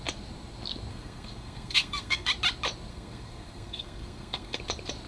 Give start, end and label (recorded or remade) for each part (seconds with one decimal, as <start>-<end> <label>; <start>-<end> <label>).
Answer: 0.0-0.9 recorded; 0.9-2.3 remade; 2.3-2.9 recorded; 2.9-4.6 remade; 4.6-5.1 recorded